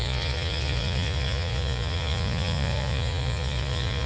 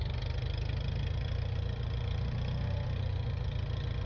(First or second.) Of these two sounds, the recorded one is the second